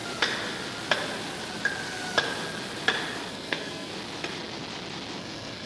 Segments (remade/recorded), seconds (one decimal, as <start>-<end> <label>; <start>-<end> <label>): 0.0-3.3 recorded; 3.3-3.9 remade; 3.9-5.2 recorded; 5.2-5.7 remade